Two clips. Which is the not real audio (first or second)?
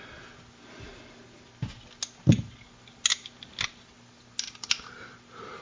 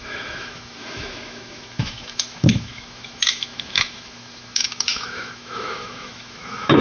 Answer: second